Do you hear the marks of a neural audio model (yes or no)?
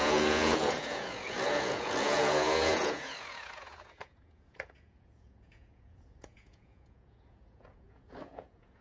yes